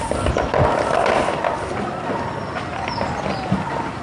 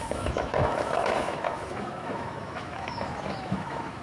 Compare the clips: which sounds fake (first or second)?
second